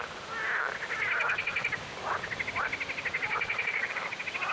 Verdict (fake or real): real